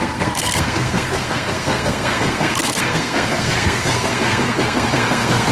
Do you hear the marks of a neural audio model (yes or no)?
yes